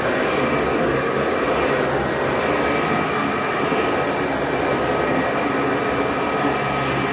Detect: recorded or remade recorded